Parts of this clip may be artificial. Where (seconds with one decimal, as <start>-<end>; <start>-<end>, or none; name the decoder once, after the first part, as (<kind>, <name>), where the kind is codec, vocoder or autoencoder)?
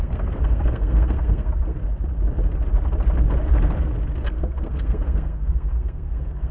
0.0-1.8 (codec, SNAC); 4.3-6.5